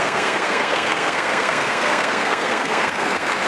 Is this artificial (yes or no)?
yes